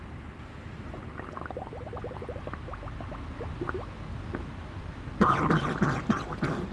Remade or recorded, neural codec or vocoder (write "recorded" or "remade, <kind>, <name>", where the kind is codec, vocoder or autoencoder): recorded